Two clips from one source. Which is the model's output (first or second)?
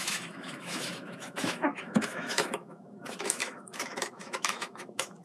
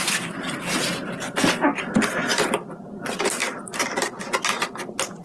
first